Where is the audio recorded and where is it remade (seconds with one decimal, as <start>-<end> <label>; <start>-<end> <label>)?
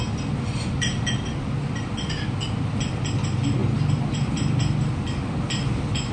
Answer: 0.0-6.1 recorded